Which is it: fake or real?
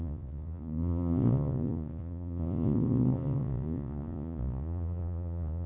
fake